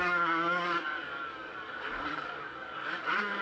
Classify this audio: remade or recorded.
remade